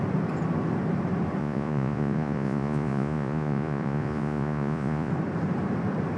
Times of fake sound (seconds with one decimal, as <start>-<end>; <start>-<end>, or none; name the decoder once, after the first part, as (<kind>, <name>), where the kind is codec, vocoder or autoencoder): 1.4-5.1 (vocoder, Vocos)